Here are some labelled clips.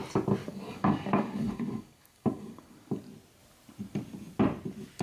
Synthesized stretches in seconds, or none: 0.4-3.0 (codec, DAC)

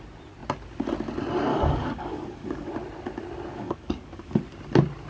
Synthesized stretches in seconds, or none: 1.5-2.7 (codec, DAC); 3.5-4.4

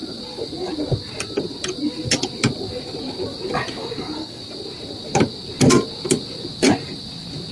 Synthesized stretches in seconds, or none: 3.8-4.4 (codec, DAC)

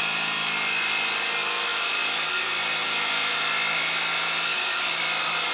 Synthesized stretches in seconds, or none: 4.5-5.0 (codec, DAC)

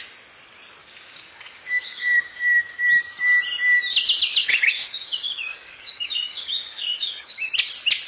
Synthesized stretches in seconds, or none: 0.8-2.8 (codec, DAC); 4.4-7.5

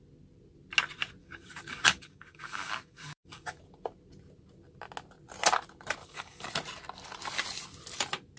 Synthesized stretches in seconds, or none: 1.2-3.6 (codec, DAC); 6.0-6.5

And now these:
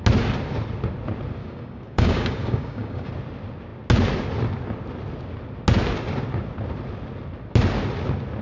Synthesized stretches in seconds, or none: 1.4-3.1 (codec, DAC)